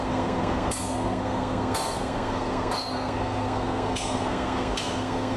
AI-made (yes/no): yes